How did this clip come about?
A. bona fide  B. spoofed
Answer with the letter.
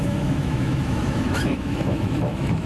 B